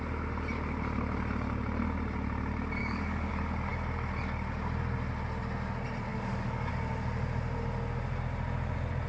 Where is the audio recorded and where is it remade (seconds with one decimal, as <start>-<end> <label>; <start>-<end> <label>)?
0.0-2.8 recorded; 2.8-3.3 remade; 3.3-6.1 recorded; 6.1-6.7 remade; 6.7-9.1 recorded